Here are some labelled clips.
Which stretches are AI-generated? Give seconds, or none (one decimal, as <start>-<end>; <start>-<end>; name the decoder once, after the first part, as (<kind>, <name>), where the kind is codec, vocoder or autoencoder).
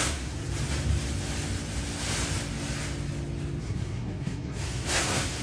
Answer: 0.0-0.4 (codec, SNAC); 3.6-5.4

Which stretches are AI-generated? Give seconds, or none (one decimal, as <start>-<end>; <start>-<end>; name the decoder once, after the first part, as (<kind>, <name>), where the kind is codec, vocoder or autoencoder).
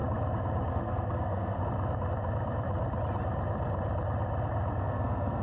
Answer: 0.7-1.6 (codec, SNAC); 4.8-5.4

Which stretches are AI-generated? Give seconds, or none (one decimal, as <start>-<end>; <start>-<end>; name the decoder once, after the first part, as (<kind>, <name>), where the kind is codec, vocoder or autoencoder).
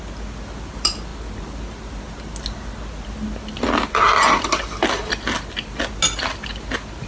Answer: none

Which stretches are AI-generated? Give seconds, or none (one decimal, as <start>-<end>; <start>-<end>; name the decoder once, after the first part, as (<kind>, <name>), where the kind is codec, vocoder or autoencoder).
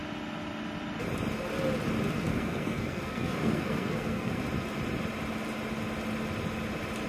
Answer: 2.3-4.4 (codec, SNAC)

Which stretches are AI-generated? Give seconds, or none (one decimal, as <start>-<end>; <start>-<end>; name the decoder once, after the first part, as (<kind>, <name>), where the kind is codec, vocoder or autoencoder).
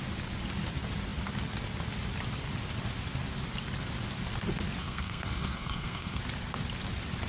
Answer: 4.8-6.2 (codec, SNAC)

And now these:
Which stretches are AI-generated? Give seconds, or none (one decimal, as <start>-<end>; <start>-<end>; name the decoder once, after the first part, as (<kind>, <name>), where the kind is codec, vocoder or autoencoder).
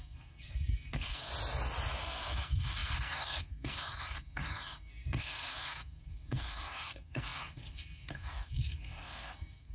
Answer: 0.0-1.3 (codec, SNAC); 2.0-9.7